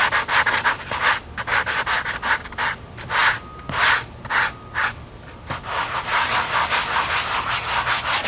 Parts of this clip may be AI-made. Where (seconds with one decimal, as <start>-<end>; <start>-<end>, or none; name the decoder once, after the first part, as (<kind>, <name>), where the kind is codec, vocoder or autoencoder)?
none